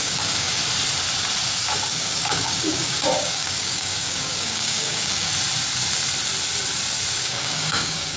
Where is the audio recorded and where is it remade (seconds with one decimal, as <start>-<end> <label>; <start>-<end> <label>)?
0.0-0.6 remade; 0.6-1.9 recorded; 1.9-5.3 remade; 5.3-7.2 recorded; 7.2-8.2 remade